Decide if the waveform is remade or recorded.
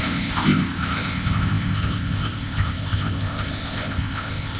remade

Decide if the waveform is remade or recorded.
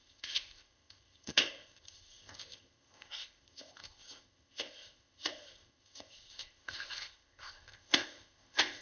remade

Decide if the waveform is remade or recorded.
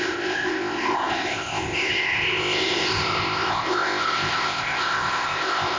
remade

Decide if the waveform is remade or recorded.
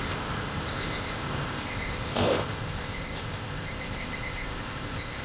remade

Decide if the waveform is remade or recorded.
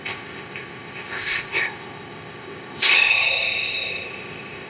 remade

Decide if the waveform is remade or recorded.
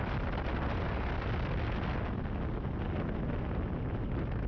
recorded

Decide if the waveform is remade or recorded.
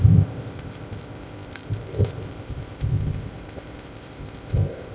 remade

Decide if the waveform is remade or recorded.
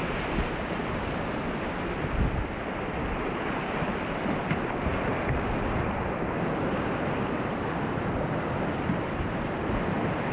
recorded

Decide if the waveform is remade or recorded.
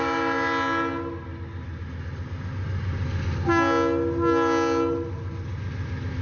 recorded